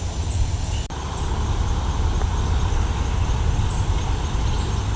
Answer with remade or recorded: recorded